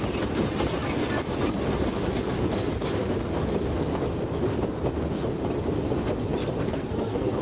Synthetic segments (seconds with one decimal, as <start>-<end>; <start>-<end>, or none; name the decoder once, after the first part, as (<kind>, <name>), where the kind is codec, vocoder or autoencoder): 6.6-7.4 (codec, SNAC)